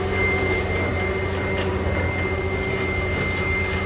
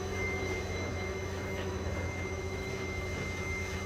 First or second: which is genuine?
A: first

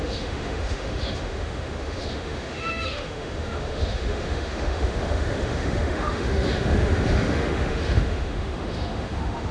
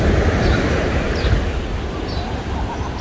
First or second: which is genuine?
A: second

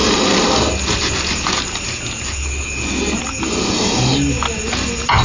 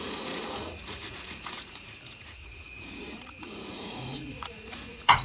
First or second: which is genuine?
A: first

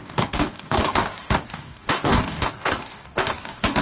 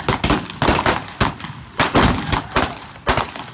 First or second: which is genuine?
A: second